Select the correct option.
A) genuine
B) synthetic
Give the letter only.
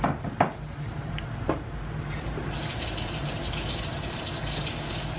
A